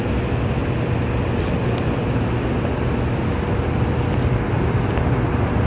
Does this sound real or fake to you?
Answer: real